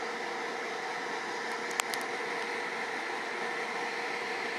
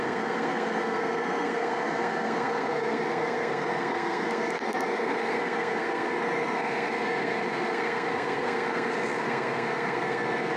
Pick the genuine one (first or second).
first